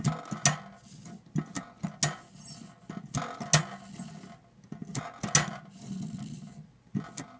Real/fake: real